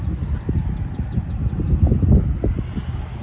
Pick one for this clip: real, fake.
real